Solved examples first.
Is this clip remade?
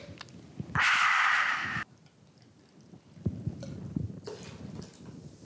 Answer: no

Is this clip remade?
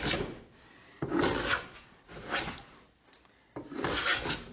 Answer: no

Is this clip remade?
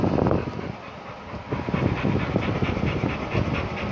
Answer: no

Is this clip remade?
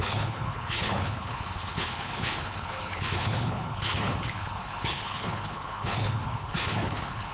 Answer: yes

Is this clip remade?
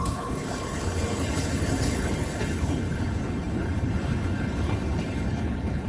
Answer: yes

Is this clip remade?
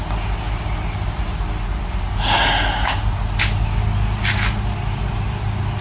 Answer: yes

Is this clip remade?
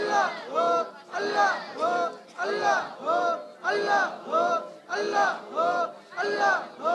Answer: no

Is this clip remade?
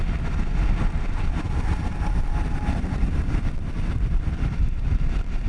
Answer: yes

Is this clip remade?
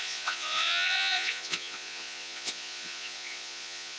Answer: yes